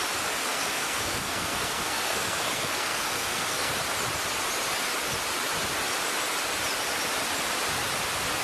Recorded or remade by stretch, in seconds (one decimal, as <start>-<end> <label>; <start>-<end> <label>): 0.0-0.5 recorded; 0.5-3.7 remade; 3.7-8.4 recorded